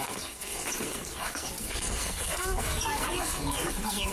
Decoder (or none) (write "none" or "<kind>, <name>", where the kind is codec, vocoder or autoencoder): codec, SNAC